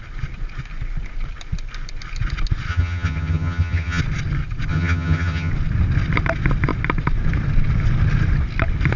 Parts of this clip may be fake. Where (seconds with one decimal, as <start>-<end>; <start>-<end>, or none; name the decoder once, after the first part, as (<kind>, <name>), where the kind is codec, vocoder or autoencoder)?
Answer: 2.7-4.0 (vocoder, HiFi-GAN); 4.7-5.5